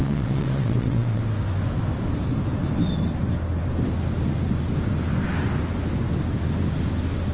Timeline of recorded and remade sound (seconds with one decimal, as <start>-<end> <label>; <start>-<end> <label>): 0.0-1.2 remade; 1.2-7.3 recorded